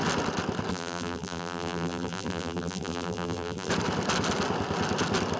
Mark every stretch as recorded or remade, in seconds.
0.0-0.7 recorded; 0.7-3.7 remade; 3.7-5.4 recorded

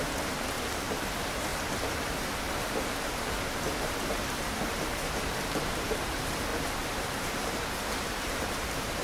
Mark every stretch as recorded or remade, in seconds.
0.0-9.0 remade

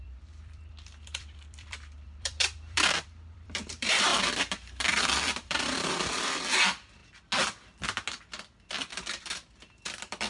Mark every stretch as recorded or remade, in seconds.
0.0-7.0 remade; 7.0-8.7 recorded; 8.7-10.3 remade

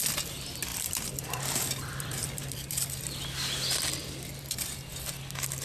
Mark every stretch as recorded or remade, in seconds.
0.0-0.7 recorded; 0.7-2.7 remade; 2.7-4.0 recorded; 4.0-4.9 remade; 4.9-5.6 recorded

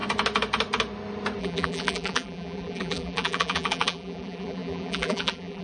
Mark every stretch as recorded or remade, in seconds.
0.0-1.4 recorded; 1.4-5.6 remade